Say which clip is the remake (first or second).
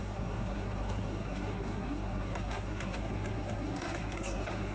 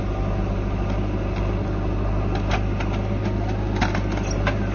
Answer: first